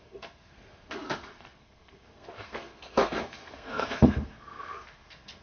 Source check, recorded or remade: remade